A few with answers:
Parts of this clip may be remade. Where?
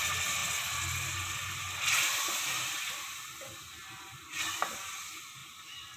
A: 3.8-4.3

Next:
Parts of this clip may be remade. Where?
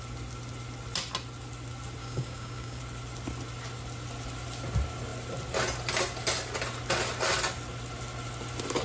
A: 2.0-2.8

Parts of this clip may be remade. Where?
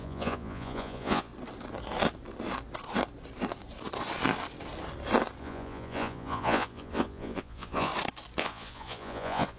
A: 0.0-1.3; 5.4-7.9; 8.4-9.6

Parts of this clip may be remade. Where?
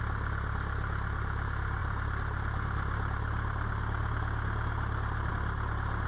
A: none